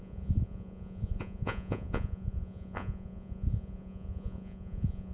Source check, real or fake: fake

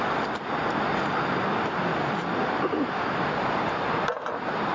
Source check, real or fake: real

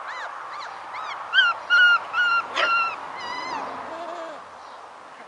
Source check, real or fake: real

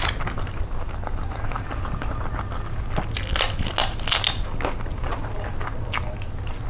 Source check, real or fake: real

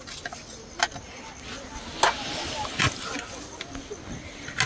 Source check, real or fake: real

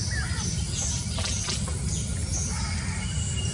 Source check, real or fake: real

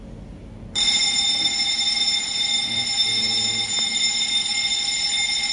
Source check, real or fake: real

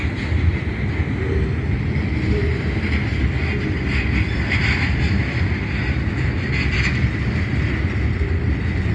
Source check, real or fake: real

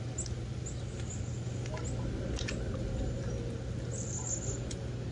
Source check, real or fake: real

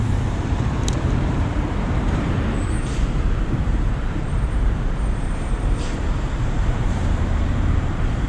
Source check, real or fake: fake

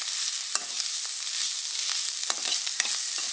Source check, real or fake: real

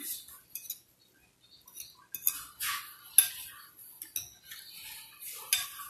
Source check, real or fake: real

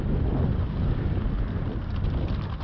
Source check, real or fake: real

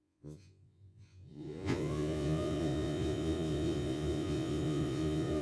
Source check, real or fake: fake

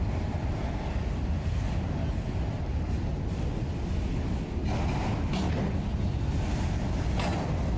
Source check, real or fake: real